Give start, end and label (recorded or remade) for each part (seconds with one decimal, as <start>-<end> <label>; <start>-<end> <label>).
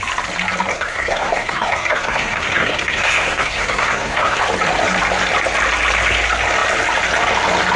0.0-0.7 recorded; 0.7-4.4 remade; 4.4-7.8 recorded